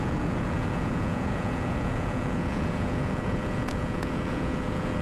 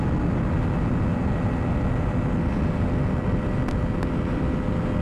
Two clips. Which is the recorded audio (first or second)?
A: second